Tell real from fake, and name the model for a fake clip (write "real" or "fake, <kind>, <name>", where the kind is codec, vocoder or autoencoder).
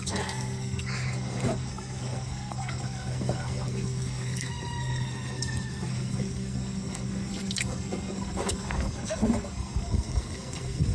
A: fake, codec, SNAC